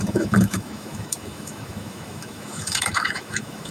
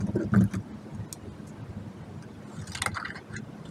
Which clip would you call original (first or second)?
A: second